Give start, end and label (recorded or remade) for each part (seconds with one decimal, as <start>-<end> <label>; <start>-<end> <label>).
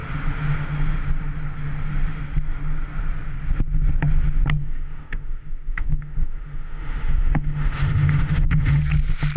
0.0-4.6 recorded; 4.6-8.8 remade; 8.8-9.4 recorded